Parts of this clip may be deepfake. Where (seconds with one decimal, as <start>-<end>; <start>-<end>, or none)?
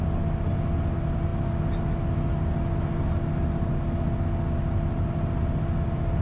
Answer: none